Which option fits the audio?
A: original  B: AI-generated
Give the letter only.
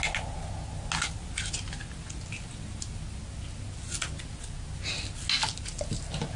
A